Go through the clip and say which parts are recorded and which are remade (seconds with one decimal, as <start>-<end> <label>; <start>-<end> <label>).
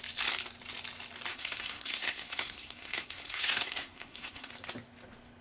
0.0-1.3 recorded; 1.3-4.5 remade; 4.5-5.4 recorded